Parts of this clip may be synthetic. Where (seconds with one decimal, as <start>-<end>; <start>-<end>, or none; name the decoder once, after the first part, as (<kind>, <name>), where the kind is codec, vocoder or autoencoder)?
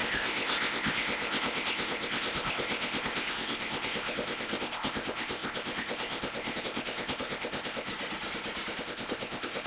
0.0-7.9 (codec, ZipCodec); 8.8-9.7